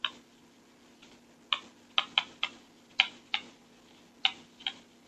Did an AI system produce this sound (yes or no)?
no